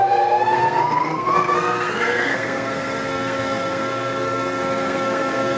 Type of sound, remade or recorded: remade